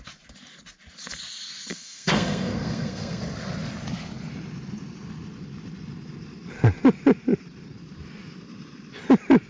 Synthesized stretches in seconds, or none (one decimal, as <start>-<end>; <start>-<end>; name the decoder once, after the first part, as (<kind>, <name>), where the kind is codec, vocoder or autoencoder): 1.7-3.2 (codec, SNAC)